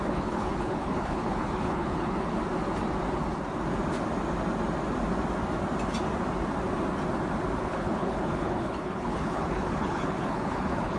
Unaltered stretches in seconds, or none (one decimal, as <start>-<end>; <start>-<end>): 2.4-7.6